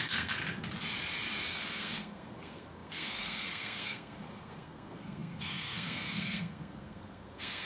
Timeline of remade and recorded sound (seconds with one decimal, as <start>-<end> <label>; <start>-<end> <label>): 0.0-0.4 remade; 0.4-1.5 recorded; 1.5-7.7 remade